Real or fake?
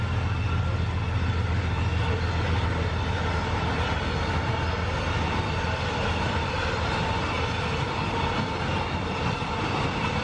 real